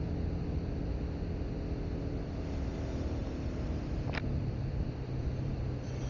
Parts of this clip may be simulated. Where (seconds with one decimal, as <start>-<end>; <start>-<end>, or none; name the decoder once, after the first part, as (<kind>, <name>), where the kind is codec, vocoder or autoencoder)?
3.2-5.5 (vocoder, BigVGAN v2)